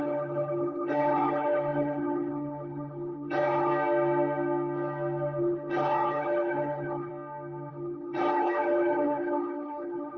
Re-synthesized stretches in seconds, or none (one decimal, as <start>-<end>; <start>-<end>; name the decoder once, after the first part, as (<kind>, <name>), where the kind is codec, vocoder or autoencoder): 0.0-3.7 (codec, HILCodec); 5.4-7.1; 7.7-10.2